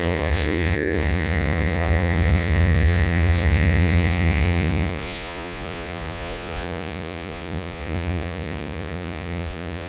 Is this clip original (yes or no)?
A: no